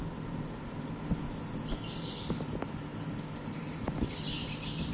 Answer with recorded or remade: recorded